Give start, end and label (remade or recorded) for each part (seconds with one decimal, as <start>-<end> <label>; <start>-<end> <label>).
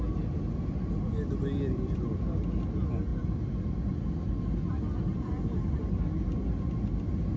0.0-7.4 recorded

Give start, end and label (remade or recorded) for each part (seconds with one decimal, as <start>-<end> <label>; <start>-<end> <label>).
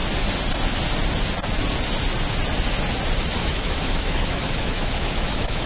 0.0-3.4 recorded; 3.4-5.7 remade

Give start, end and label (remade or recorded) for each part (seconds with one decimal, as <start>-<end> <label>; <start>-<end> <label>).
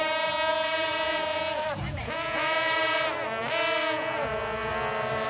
0.0-0.5 recorded; 0.5-3.0 remade; 3.0-3.8 recorded; 3.8-4.7 remade; 4.7-5.3 recorded